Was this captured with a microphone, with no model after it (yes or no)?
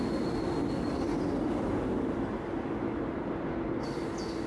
yes